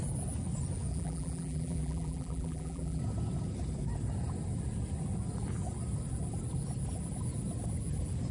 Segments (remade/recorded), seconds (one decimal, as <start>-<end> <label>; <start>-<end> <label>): 0.0-0.9 recorded; 0.9-3.0 remade; 3.0-8.3 recorded